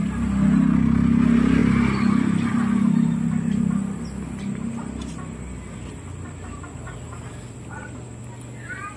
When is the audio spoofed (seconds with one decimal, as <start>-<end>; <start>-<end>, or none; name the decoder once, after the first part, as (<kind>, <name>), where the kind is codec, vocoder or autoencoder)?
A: none